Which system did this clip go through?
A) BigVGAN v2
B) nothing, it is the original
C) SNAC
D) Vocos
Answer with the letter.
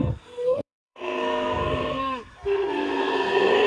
C